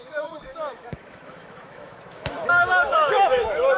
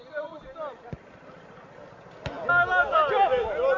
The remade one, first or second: first